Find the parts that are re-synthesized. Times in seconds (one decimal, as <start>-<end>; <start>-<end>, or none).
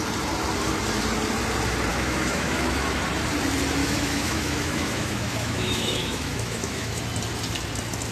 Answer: 1.9-3.0; 3.8-7.0